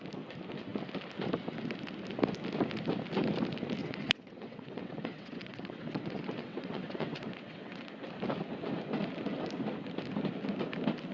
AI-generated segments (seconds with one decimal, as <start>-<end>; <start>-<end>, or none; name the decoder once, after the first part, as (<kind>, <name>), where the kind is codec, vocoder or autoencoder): 3.8-7.8 (vocoder, WaveNeXt)